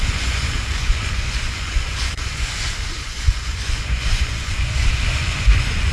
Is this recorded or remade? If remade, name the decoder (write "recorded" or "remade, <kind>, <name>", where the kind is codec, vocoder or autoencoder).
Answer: remade, vocoder, Vocos